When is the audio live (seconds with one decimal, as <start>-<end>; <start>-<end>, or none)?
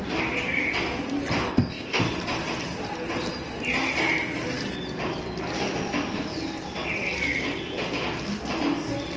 0.0-1.5; 2.0-9.2